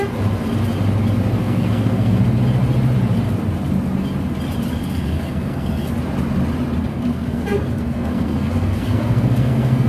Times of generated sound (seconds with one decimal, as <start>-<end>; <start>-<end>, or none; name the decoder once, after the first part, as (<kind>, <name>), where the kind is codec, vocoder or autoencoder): 1.4-2.2 (codec, SNAC); 4.8-5.9; 6.9-9.9